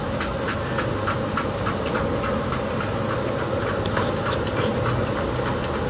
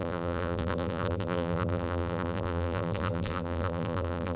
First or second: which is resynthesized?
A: second